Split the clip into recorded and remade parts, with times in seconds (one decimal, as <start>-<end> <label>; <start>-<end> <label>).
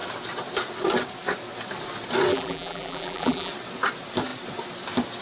0.0-2.3 recorded; 2.3-3.5 remade; 3.5-5.2 recorded